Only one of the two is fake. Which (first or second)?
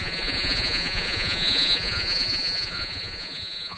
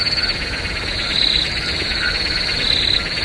first